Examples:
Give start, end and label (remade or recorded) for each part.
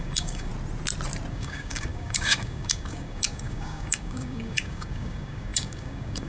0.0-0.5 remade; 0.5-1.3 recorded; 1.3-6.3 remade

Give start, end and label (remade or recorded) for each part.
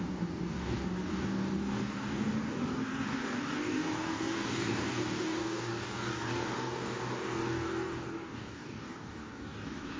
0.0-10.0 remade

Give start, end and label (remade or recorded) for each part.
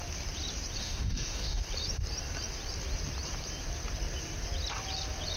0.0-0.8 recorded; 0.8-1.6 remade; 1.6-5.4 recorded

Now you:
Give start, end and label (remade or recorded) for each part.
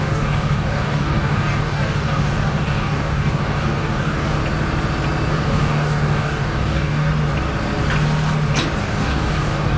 0.0-4.4 remade; 4.4-5.3 recorded; 5.3-7.1 remade; 7.1-8.8 recorded; 8.8-9.8 remade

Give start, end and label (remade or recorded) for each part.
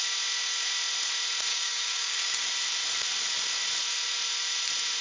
0.0-1.5 recorded; 1.5-2.5 remade; 2.5-5.0 recorded